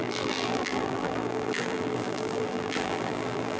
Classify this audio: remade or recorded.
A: remade